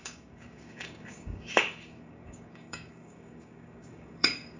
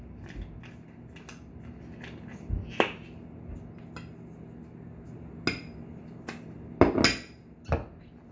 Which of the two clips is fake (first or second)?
first